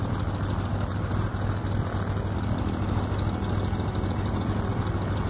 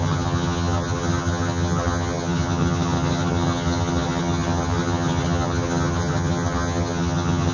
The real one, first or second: first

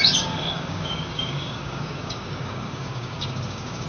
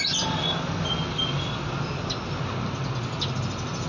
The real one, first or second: second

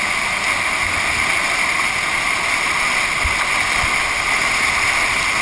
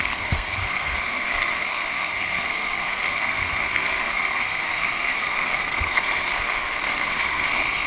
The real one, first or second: first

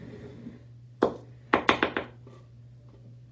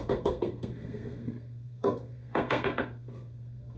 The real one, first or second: first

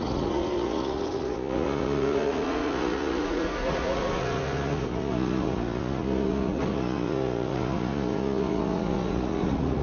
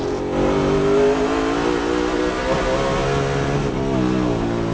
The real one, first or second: second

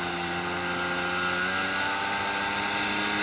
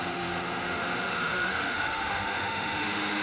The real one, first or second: first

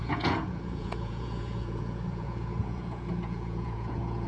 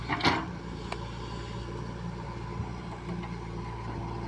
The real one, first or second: second